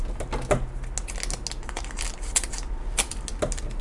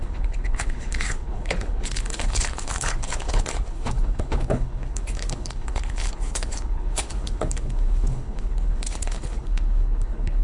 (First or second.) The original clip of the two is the first